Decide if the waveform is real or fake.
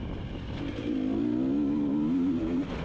real